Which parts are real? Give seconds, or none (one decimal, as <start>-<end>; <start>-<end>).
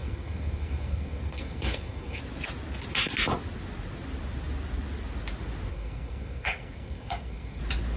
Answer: 2.2-5.7; 7.6-8.0